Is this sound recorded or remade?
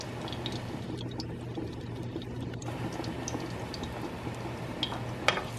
recorded